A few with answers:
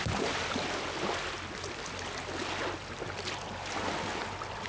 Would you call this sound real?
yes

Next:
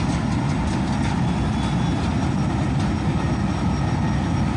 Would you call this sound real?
yes